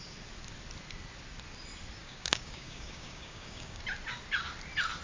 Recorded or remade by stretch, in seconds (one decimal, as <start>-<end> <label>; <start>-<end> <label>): 0.0-2.0 recorded; 2.0-3.8 remade; 3.8-5.0 recorded